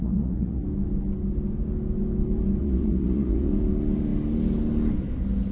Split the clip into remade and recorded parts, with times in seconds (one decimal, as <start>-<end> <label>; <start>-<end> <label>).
0.0-0.6 remade; 0.6-2.6 recorded; 2.6-3.5 remade; 3.5-5.5 recorded